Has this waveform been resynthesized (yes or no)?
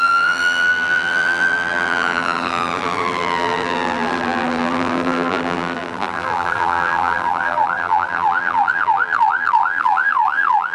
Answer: yes